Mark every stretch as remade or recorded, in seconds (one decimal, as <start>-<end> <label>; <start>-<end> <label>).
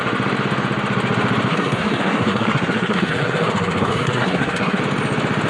0.0-1.5 recorded; 1.5-4.8 remade; 4.8-5.5 recorded